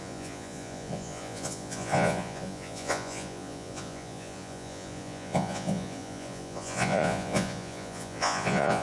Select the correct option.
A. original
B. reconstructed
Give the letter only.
B